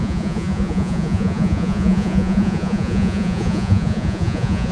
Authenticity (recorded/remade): remade